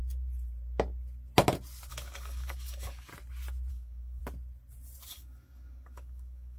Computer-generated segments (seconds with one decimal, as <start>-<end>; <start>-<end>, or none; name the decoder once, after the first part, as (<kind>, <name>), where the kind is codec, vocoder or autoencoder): 1.9-3.1 (codec, DAC); 3.7-4.2; 5.1-6.6